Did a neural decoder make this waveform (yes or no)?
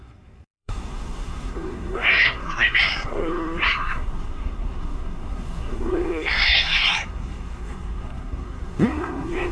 yes